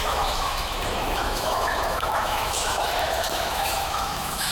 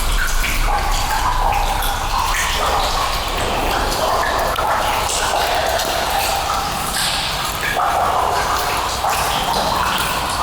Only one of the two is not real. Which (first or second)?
first